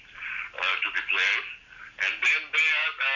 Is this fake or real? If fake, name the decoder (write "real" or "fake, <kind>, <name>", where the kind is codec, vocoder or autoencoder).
real